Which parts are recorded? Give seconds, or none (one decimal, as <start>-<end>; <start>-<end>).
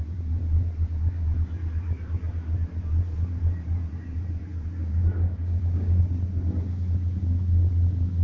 0.0-4.8; 6.0-8.2